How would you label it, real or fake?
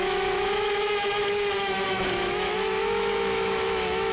fake